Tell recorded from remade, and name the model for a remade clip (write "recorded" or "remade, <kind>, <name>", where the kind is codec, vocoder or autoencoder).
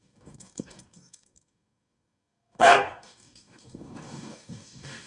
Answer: remade, codec, DAC